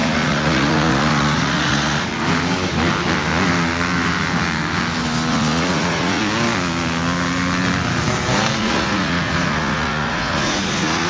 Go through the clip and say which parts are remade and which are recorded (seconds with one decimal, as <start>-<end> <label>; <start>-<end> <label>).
0.0-2.1 remade; 2.1-5.3 recorded; 5.3-6.2 remade; 6.2-8.6 recorded; 8.6-11.1 remade